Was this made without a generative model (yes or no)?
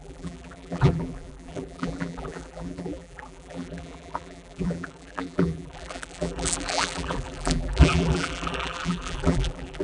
no